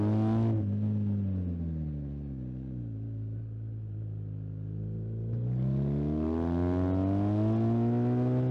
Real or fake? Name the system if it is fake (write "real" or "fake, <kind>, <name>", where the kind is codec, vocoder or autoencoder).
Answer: real